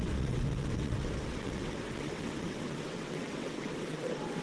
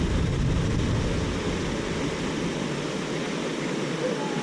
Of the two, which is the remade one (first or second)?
first